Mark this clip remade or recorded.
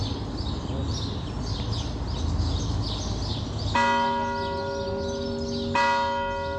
recorded